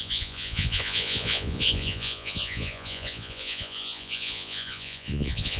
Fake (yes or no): yes